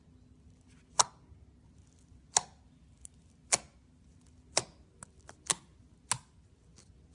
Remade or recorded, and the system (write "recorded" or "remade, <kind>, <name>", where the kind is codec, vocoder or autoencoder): recorded